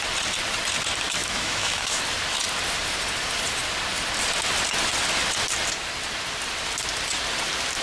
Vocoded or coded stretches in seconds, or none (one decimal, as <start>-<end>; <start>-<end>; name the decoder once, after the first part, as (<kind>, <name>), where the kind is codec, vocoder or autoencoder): 1.2-2.0 (autoencoder, DAC-VAE)

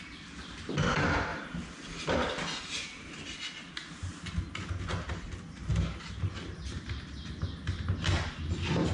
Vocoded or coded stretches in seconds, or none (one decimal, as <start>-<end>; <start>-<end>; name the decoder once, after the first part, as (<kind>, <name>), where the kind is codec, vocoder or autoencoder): 1.3-2.1 (vocoder, BigVGAN v2)

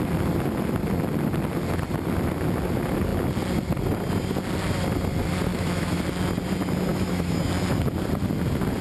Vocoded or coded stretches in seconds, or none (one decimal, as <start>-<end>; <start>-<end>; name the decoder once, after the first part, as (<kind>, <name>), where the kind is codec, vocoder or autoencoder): 5.5-6.0 (autoencoder, DAC-VAE); 6.9-7.4

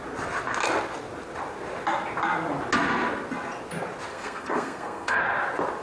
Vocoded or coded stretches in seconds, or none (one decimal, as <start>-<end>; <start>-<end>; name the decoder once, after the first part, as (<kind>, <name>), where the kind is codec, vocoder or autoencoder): 4.1-5.2 (codec, SNAC)

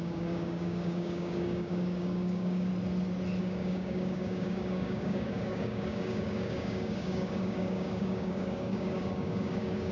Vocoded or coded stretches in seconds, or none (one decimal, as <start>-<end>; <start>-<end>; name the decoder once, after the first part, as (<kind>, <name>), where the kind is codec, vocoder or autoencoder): 0.0-2.7 (codec, DAC); 3.4-9.9

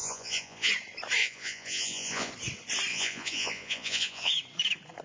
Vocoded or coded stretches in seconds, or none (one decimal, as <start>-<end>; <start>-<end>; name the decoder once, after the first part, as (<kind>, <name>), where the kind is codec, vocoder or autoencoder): 0.0-0.7 (vocoder, Vocos); 1.2-2.3; 2.9-4.3